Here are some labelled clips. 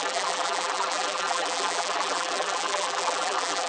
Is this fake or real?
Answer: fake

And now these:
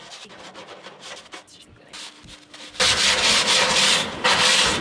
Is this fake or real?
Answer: real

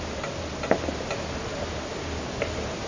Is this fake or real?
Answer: real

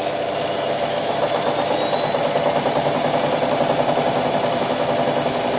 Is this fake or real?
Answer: real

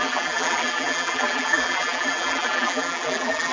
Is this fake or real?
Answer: fake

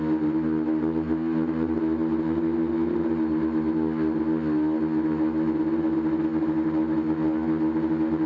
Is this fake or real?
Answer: real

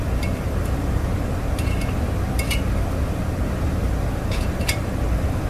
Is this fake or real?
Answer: fake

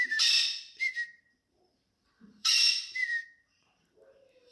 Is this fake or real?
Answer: fake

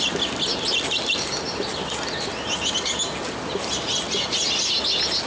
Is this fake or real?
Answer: real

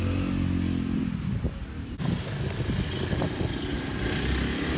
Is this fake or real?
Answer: real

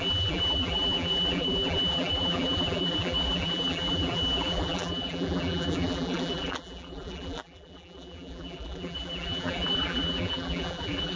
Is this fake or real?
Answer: fake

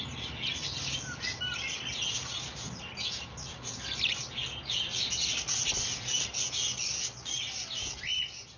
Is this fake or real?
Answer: real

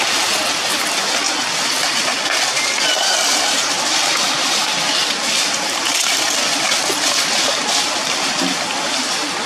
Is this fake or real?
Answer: real